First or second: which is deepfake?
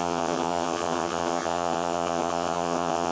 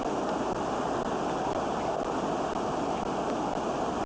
first